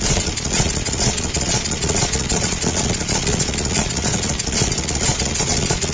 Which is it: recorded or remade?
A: remade